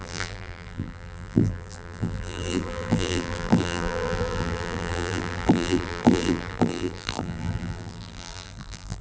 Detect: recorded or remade remade